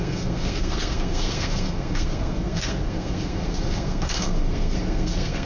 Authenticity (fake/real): fake